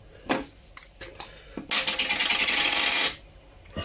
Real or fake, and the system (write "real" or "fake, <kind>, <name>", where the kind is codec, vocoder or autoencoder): real